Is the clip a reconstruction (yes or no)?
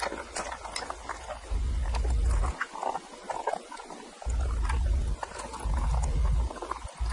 no